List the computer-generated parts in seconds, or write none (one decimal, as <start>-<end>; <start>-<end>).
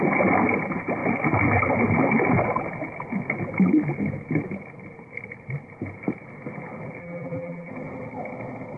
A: 7.0-7.7